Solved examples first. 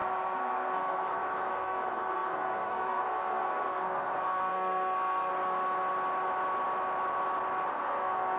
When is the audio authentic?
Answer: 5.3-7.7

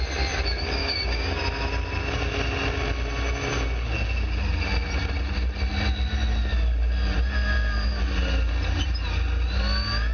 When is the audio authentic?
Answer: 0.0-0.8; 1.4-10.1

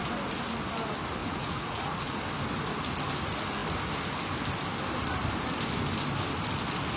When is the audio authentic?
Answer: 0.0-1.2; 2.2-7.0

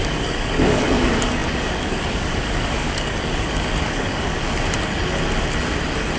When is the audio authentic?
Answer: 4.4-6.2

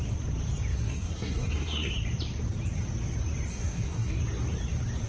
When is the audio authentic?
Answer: 0.0-0.7; 1.9-3.5; 4.2-5.1